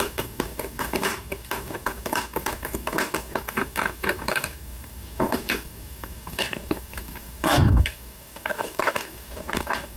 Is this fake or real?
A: fake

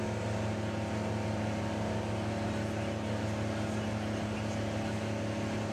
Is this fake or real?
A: real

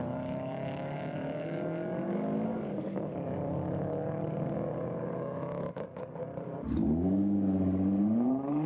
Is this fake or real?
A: fake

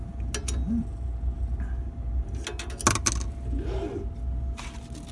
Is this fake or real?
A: real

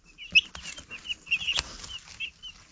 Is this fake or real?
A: real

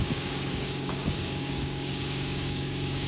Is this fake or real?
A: fake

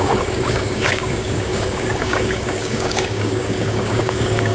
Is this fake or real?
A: fake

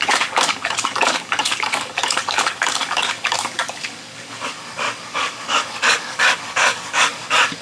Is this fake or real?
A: fake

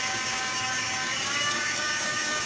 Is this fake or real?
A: fake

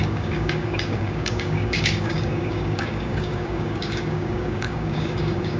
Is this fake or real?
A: fake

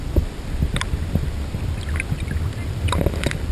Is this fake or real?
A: real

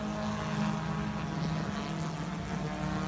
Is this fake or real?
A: real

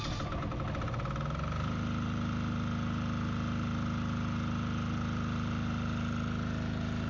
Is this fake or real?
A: real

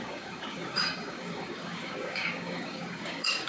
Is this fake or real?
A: fake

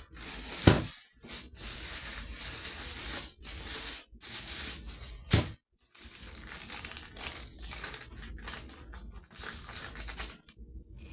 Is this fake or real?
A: real